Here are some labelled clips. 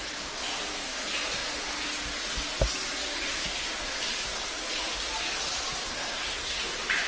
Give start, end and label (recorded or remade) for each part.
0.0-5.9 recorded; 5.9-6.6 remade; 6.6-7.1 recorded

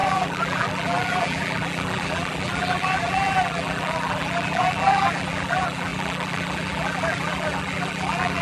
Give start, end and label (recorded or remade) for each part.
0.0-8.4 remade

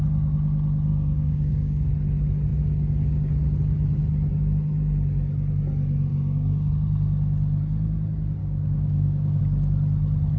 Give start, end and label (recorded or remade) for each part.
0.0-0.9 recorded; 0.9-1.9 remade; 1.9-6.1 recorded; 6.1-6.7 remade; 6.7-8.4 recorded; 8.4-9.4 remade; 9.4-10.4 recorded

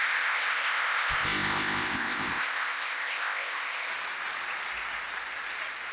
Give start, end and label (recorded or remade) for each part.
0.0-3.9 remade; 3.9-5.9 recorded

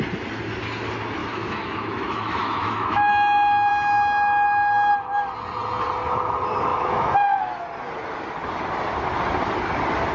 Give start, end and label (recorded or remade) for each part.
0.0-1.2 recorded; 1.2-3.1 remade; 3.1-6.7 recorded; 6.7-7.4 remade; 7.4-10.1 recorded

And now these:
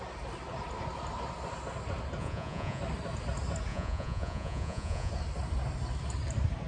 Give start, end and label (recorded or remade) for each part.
0.0-2.2 recorded; 2.2-2.8 remade; 2.8-3.7 recorded; 3.7-5.1 remade; 5.1-6.7 recorded